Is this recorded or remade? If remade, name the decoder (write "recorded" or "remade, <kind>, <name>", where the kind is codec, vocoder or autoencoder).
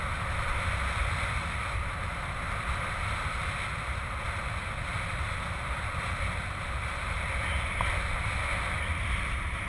recorded